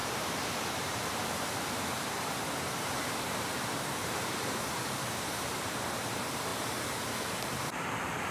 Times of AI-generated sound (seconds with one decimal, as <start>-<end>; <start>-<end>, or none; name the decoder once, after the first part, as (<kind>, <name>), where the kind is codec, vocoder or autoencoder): 0.0-8.3 (vocoder, BigVGAN v2)